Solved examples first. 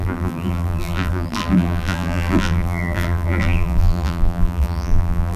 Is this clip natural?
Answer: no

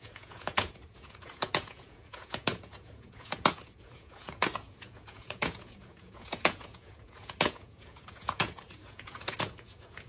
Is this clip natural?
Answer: no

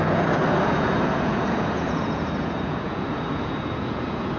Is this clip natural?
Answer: no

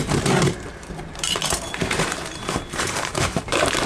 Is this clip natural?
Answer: no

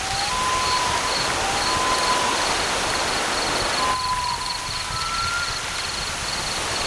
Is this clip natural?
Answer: yes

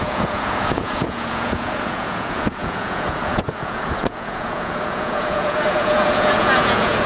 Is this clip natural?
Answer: no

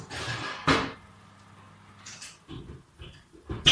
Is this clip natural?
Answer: yes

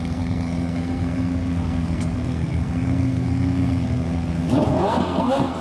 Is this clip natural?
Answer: no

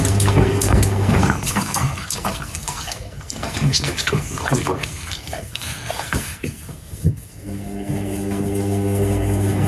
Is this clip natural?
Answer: no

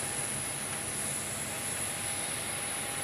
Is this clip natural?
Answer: yes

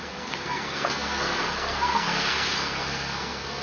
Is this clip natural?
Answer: no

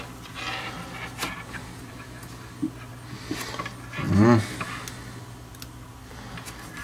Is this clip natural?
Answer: yes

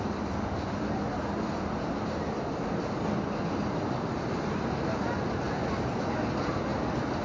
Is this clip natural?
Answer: yes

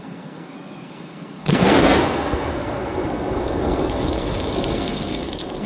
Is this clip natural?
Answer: no